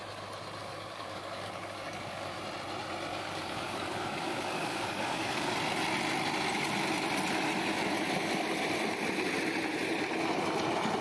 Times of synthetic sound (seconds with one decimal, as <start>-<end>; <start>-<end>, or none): 0.6-2.4; 3.1-5.5